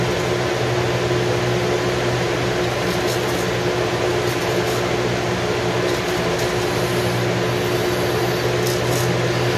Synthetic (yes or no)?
no